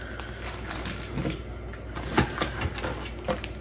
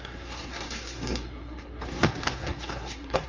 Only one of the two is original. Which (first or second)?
first